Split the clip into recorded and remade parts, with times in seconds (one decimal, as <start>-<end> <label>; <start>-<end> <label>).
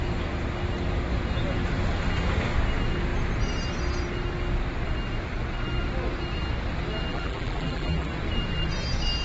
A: 0.0-7.1 recorded; 7.1-8.1 remade; 8.1-9.2 recorded